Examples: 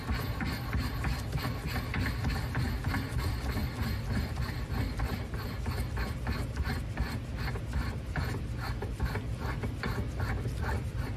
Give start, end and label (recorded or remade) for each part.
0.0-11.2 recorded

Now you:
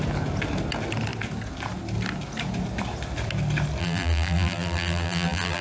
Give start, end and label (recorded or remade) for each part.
0.0-3.8 recorded; 3.8-5.6 remade

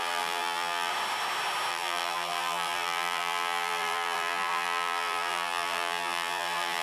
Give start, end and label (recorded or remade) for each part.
0.0-0.9 remade; 0.9-1.7 recorded; 1.7-6.8 remade

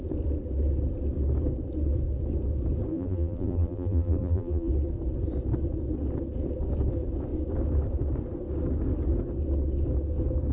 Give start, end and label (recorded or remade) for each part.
0.0-2.9 recorded; 2.9-4.7 remade; 4.7-10.5 recorded

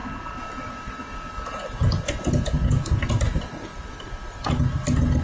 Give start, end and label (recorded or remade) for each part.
0.0-3.1 recorded; 3.1-3.7 remade; 3.7-5.2 recorded

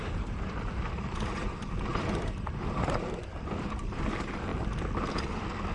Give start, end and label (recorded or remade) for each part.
0.0-4.5 remade; 4.5-5.7 recorded

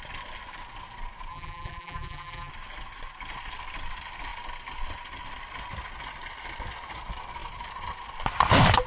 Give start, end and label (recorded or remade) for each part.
0.0-1.3 recorded; 1.3-2.5 remade; 2.5-8.9 recorded